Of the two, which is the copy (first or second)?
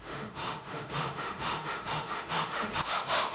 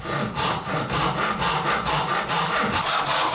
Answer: first